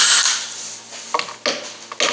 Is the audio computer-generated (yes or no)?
no